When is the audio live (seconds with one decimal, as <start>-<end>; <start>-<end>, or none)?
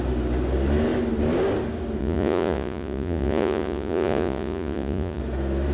0.0-2.0; 5.2-5.7